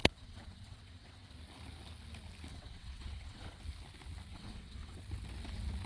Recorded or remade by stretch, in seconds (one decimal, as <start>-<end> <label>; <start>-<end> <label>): 0.0-1.3 remade; 1.3-2.5 recorded; 2.5-3.6 remade; 3.6-4.3 recorded; 4.3-5.0 remade; 5.0-5.9 recorded